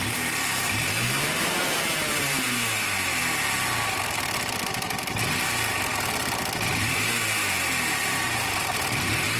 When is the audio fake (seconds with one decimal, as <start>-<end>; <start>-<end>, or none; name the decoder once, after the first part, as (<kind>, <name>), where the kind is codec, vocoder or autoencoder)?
0.0-3.2 (vocoder, BigVGAN v2); 6.8-9.4